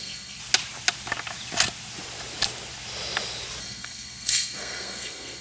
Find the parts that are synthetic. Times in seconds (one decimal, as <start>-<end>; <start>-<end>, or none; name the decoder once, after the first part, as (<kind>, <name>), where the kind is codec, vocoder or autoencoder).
0.0-0.4 (codec, SNAC); 3.6-5.4

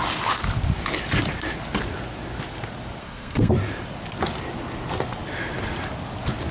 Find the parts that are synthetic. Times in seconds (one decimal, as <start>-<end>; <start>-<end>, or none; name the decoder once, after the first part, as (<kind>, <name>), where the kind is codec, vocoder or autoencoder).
3.0-3.5 (codec, SNAC)

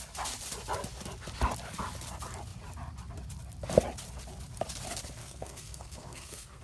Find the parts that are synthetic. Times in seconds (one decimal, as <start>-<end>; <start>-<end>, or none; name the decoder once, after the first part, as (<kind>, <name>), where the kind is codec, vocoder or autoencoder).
5.2-6.6 (codec, SNAC)

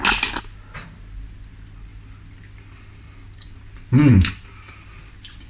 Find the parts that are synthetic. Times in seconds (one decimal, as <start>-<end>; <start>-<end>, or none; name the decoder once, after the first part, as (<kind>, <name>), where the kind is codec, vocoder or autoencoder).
none

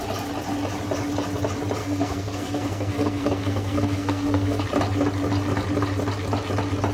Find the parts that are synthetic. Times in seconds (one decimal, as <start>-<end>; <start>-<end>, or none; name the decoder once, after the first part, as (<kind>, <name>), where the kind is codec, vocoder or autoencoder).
1.8-4.6 (codec, SNAC)